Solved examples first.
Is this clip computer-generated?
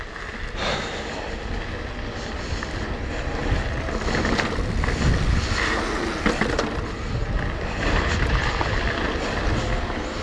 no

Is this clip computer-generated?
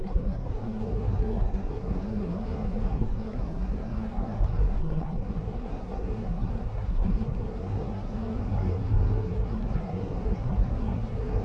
yes